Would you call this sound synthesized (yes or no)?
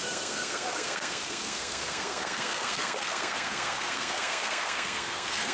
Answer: yes